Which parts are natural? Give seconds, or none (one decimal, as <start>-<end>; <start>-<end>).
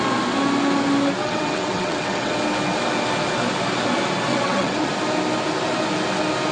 0.0-1.2; 2.3-4.3; 4.9-6.5